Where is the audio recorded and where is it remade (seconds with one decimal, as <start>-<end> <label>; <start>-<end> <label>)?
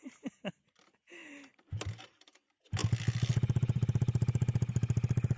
0.0-1.2 remade; 1.2-2.0 recorded; 2.0-2.8 remade; 2.8-5.4 recorded